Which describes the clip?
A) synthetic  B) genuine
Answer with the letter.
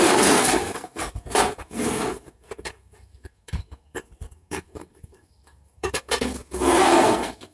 A